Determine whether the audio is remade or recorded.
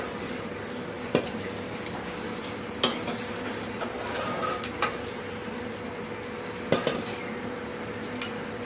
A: recorded